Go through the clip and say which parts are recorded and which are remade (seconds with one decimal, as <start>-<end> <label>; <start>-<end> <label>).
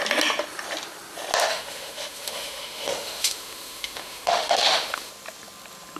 0.0-1.5 recorded; 1.5-5.1 remade; 5.1-6.0 recorded